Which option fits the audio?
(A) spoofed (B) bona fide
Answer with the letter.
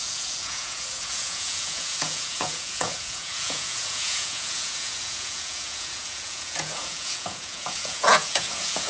A